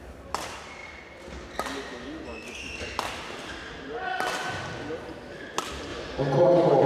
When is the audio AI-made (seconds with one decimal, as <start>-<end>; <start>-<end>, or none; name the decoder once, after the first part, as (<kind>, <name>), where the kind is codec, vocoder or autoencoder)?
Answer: none